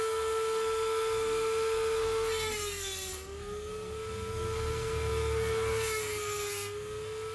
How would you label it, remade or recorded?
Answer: remade